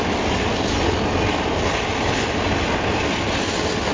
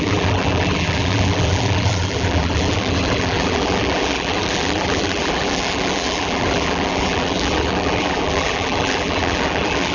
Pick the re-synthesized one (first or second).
second